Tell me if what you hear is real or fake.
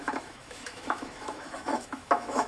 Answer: fake